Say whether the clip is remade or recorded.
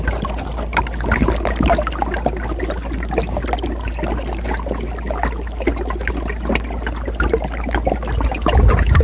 recorded